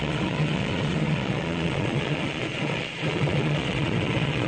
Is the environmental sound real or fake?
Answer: fake